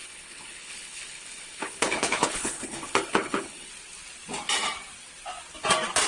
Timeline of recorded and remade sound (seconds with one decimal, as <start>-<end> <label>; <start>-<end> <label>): 0.0-3.7 remade; 3.7-6.1 recorded